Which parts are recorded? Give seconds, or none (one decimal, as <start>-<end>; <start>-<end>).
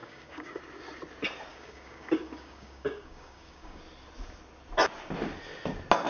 0.6-1.5; 3.8-6.1